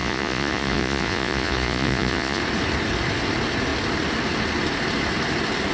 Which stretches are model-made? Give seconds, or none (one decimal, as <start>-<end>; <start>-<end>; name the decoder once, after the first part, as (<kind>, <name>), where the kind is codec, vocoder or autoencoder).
0.0-2.4 (vocoder, Vocos)